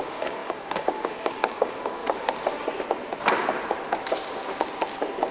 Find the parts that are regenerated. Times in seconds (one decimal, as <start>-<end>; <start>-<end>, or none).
0.0-2.0

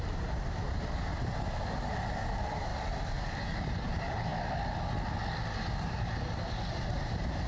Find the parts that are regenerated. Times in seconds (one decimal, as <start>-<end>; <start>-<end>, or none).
0.0-2.7; 3.4-4.3; 5.7-7.5